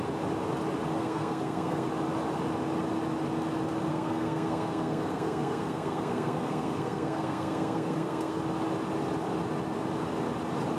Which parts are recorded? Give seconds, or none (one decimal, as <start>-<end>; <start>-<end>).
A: 0.0-1.0; 1.9-3.9; 8.4-10.8